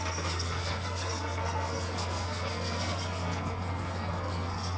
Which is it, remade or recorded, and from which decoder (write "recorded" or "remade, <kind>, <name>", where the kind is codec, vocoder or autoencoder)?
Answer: remade, codec, SNAC